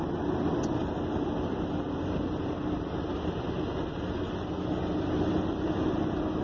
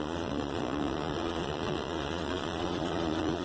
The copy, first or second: second